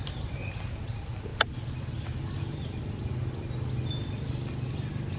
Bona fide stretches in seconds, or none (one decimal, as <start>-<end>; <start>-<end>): 0.0-5.2